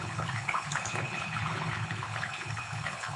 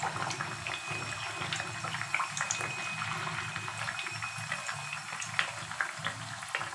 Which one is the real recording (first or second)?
second